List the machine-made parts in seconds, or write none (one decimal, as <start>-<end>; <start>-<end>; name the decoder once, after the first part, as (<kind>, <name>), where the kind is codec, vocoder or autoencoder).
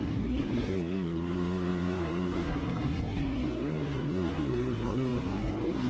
0.0-5.9 (codec, SNAC)